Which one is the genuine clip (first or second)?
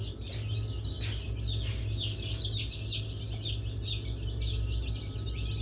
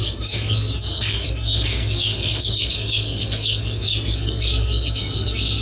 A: first